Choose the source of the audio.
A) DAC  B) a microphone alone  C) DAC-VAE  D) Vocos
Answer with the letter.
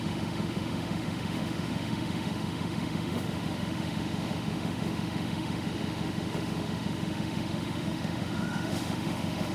C